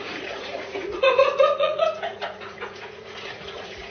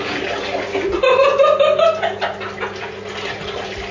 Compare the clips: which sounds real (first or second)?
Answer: second